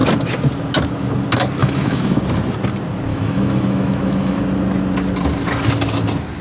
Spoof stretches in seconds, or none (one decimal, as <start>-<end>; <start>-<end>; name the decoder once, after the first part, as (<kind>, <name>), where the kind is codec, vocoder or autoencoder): 1.6-2.2 (autoencoder, DAC-VAE); 3.1-4.4